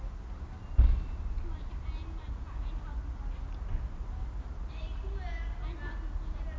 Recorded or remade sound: recorded